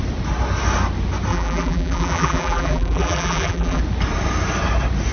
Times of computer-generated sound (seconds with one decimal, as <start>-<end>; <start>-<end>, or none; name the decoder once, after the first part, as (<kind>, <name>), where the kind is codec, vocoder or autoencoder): 1.3-3.8 (vocoder, BigVGAN v2)